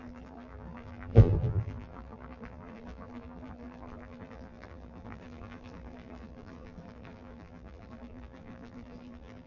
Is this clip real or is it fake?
fake